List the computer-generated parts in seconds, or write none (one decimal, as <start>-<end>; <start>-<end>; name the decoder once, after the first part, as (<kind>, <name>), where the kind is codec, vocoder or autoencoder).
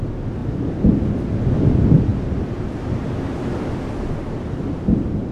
none